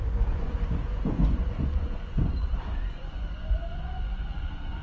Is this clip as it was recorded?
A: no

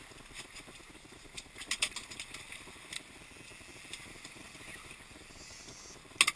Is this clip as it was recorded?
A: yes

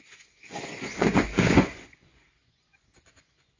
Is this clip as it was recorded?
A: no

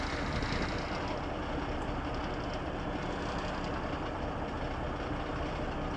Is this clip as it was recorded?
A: yes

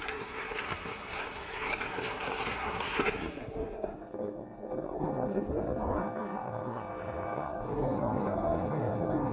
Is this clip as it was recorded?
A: no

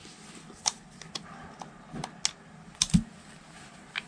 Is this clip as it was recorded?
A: yes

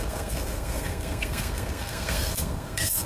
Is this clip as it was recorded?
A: no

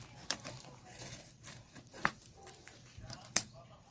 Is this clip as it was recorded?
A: no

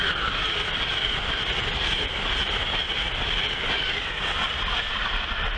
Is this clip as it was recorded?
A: yes